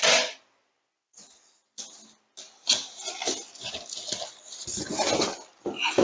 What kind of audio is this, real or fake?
real